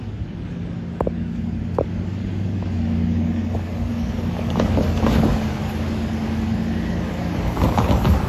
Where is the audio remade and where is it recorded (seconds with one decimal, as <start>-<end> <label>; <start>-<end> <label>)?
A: 0.0-8.3 remade